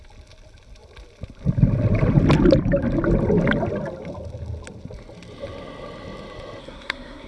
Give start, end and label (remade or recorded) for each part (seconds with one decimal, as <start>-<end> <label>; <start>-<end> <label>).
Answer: 0.0-6.6 recorded; 6.6-7.3 remade